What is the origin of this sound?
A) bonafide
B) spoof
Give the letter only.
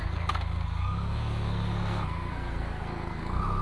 B